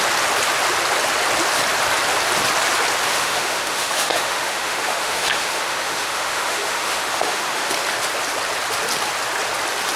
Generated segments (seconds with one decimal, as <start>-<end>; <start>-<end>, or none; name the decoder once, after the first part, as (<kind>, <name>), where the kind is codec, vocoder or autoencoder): 3.1-7.7 (autoencoder, DAC-VAE)